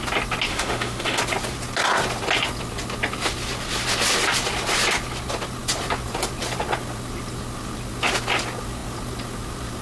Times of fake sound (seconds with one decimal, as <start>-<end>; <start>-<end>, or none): 0.5-1.2